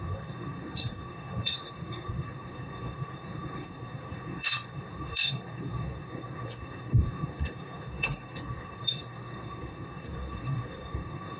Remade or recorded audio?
remade